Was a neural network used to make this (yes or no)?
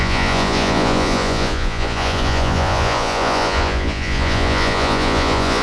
yes